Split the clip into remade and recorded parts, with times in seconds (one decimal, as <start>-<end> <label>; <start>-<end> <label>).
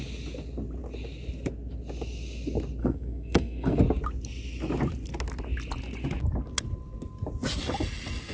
0.0-2.8 recorded; 2.8-3.8 remade; 3.8-8.3 recorded